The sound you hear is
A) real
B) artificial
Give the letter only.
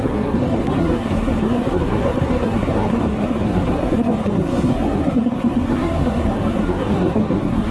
B